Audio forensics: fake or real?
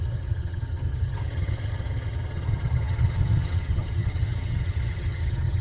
fake